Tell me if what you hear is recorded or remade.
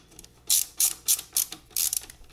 remade